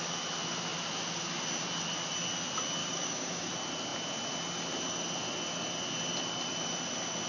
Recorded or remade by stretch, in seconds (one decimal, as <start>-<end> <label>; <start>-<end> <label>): 0.0-2.8 recorded; 2.8-3.5 remade; 3.5-7.3 recorded

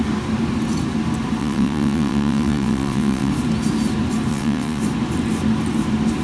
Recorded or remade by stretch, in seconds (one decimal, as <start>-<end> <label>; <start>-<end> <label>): 0.0-1.4 recorded; 1.4-3.3 remade; 3.3-4.3 recorded; 4.3-4.8 remade; 4.8-6.2 recorded

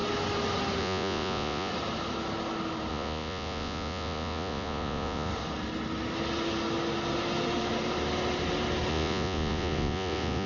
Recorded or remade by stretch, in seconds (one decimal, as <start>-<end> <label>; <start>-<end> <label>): 0.0-0.8 recorded; 0.8-1.7 remade; 1.7-2.9 recorded; 2.9-5.3 remade; 5.3-8.9 recorded; 8.9-10.5 remade

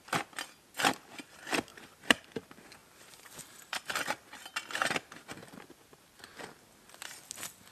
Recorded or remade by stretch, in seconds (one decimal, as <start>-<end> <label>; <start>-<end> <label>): 0.0-1.7 recorded; 1.7-2.2 remade; 2.2-2.8 recorded; 2.8-4.5 remade; 4.5-5.4 recorded; 5.4-6.2 remade; 6.2-7.7 recorded

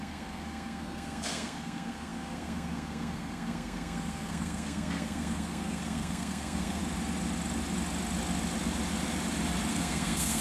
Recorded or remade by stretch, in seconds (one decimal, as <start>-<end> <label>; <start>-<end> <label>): 0.0-6.8 remade; 6.8-9.7 recorded; 9.7-10.4 remade

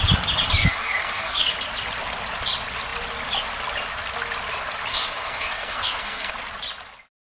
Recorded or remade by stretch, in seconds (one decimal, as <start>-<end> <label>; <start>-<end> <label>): 0.0-0.6 recorded; 0.6-1.5 remade; 1.5-4.9 recorded; 4.9-6.3 remade; 6.3-7.3 recorded

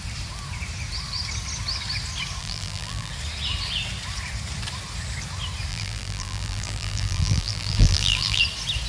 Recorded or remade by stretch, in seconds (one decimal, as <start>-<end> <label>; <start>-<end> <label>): 0.0-2.4 recorded; 2.4-3.1 remade; 3.1-5.7 recorded; 5.7-8.4 remade; 8.4-8.9 recorded